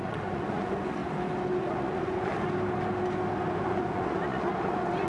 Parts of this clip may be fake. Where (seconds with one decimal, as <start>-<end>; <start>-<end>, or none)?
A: 0.0-1.0; 1.6-2.3; 3.6-5.1